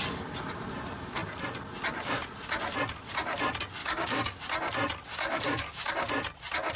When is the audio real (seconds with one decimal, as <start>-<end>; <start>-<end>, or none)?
0.0-3.8; 4.4-5.1; 5.9-6.8

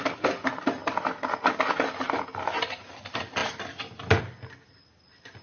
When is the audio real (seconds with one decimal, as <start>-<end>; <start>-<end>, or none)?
0.0-5.4

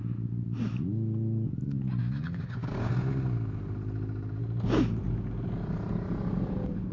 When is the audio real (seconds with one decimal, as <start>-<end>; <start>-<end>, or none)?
0.0-2.0; 2.9-6.9

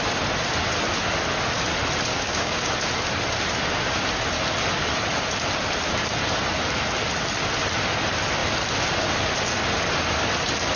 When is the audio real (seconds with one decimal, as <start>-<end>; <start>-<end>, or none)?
0.0-2.1; 2.7-10.8